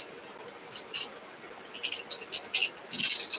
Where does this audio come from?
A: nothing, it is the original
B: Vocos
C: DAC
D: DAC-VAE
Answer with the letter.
A